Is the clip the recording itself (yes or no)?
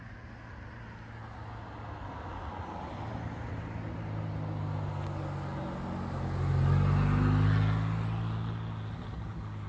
yes